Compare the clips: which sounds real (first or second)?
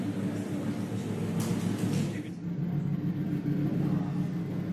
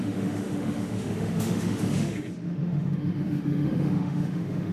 first